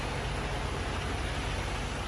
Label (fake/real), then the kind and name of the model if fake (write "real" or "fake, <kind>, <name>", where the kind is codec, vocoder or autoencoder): real